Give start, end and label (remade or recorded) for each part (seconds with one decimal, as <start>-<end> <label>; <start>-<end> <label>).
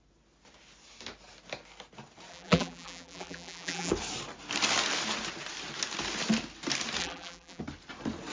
0.0-2.3 recorded; 2.3-3.9 remade; 3.9-7.0 recorded; 7.0-7.6 remade; 7.6-8.3 recorded